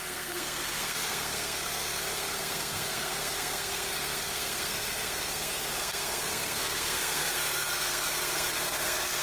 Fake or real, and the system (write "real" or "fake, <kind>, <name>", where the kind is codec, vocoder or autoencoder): fake, codec, SNAC